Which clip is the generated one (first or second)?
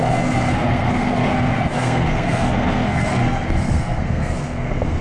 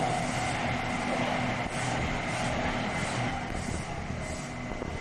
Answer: first